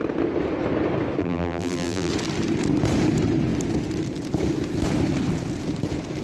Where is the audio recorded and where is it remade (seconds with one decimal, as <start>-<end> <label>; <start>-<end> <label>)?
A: 0.0-1.2 recorded; 1.2-2.1 remade; 2.1-6.2 recorded